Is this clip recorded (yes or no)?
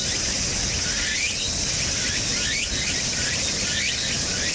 yes